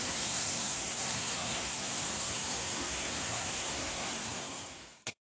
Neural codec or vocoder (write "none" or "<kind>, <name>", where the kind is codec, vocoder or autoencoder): codec, SNAC